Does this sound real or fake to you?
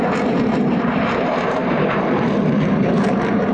fake